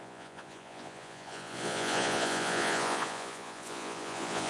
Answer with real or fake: fake